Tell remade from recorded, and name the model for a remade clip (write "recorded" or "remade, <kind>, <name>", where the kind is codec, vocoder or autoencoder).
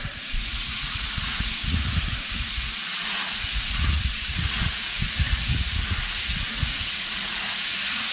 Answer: remade, vocoder, Vocos